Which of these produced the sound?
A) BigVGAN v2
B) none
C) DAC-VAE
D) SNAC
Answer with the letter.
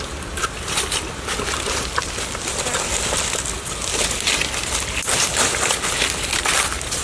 B